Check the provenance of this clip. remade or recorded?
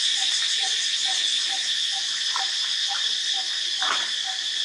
recorded